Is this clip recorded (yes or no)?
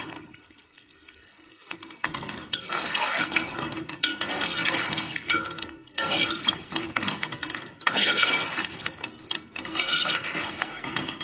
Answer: no